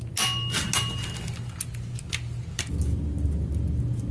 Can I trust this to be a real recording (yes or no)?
yes